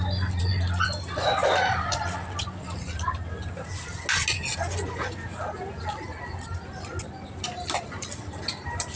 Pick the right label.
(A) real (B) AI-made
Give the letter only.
A